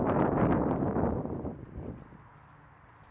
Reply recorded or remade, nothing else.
recorded